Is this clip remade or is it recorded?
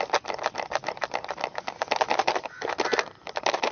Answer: recorded